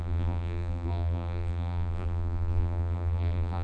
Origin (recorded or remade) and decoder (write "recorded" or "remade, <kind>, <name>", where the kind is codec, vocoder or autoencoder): remade, vocoder, BigVGAN v2